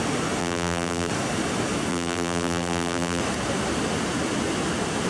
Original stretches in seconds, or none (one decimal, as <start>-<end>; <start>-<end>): 0.0-0.4; 1.1-1.9; 3.2-5.1